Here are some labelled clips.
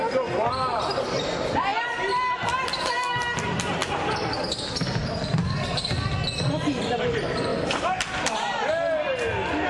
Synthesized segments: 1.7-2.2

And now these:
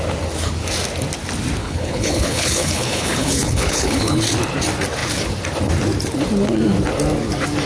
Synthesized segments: 1.6-4.2

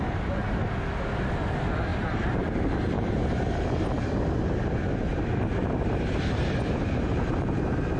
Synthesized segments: 1.9-4.0; 5.1-8.0